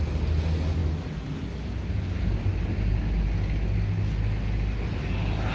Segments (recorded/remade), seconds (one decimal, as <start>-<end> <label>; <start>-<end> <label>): 0.0-5.5 recorded